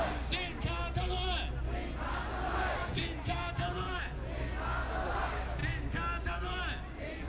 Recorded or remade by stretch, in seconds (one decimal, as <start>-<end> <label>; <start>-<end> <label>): 0.0-2.8 recorded; 2.8-4.0 remade; 4.0-7.3 recorded